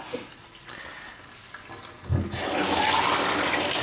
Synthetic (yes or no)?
no